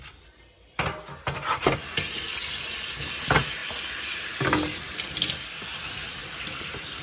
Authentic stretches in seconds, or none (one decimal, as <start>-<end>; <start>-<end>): 0.0-6.2